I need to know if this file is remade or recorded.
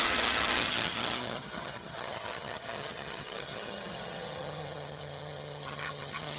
remade